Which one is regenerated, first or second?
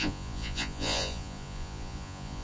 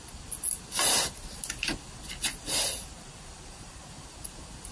first